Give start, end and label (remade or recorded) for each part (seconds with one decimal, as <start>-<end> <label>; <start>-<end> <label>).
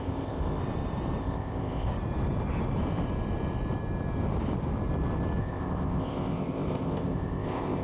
0.0-0.6 remade; 0.6-1.2 recorded; 1.2-1.9 remade; 1.9-5.4 recorded; 5.4-7.8 remade